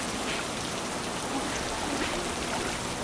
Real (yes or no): yes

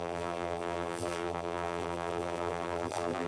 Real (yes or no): no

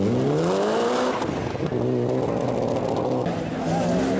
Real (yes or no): yes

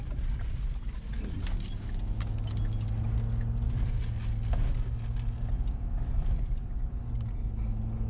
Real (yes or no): yes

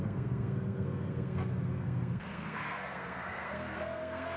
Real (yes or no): no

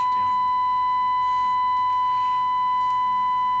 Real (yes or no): yes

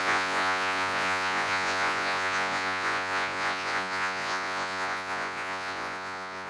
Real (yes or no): no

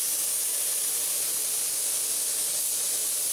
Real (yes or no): yes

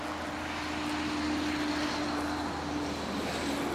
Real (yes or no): yes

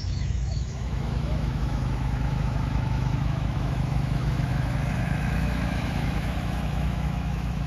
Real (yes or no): no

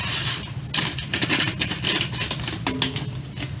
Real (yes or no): yes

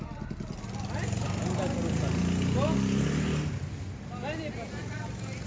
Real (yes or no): yes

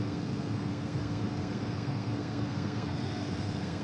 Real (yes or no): no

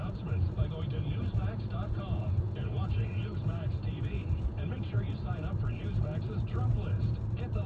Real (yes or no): no